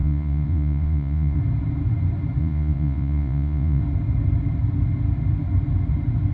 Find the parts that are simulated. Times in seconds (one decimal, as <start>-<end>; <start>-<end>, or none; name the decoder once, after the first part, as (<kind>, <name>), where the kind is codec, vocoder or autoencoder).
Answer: 0.0-1.4 (vocoder, Vocos); 2.4-3.8